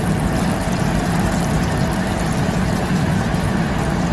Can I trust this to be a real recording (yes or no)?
yes